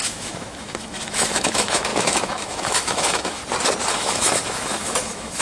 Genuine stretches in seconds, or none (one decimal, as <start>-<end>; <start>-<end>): 3.4-3.9